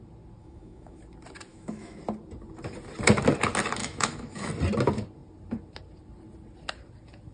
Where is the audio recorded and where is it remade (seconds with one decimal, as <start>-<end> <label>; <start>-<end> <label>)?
0.0-0.4 recorded; 0.4-1.0 remade; 1.0-1.5 recorded; 1.5-2.0 remade; 2.0-3.8 recorded; 3.8-4.5 remade; 4.5-7.3 recorded